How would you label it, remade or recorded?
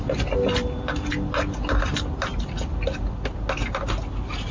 recorded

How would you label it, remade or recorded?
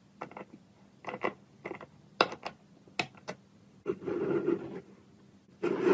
recorded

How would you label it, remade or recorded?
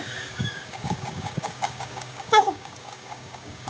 remade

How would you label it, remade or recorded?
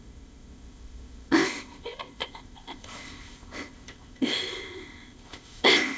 remade